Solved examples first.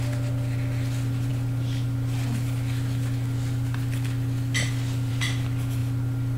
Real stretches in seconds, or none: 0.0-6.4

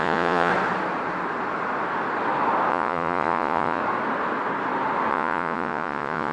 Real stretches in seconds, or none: 0.5-2.7; 3.8-5.1

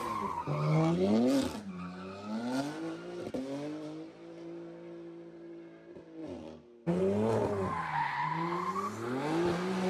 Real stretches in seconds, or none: 0.0-9.9

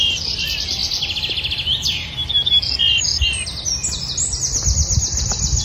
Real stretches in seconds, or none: 0.0-5.6

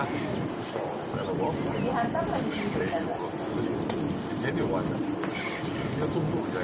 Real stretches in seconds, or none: 0.0-3.1; 3.6-6.6